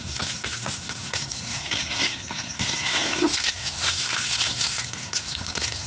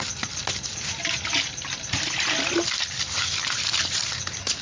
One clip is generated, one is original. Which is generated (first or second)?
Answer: first